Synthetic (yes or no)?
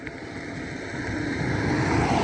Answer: no